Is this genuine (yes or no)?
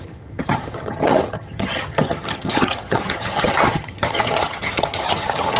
no